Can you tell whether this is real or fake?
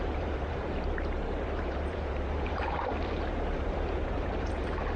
fake